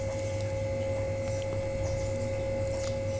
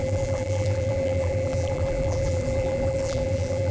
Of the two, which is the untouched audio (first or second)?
first